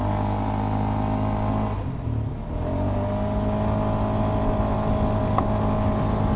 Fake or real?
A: real